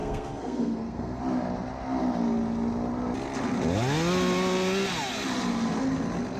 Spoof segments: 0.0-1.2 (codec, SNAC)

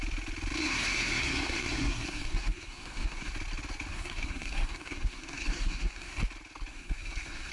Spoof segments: 0.6-3.3 (codec, SNAC); 3.9-6.2; 6.7-7.5

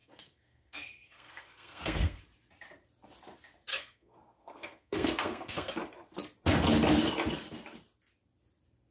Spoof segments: 0.0-2.2 (codec, SNAC); 3.7-5.7

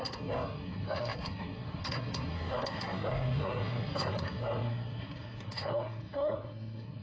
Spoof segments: 0.0-7.0 (codec, SNAC)

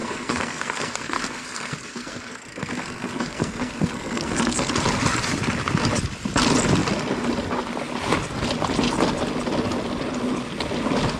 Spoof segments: 0.0-4.7 (codec, SNAC)

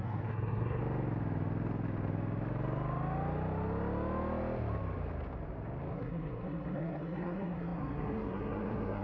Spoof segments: 0.0-0.8 (codec, SNAC); 5.9-9.0

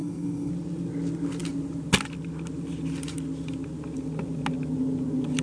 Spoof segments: 0.0-0.5 (codec, SNAC)

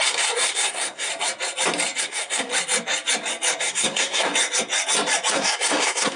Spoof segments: 0.0-1.1 (codec, SNAC); 2.0-2.5; 3.6-4.3; 5.3-6.2